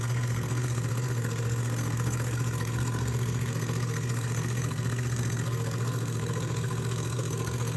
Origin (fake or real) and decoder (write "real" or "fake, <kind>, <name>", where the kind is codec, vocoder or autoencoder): fake, codec, SNAC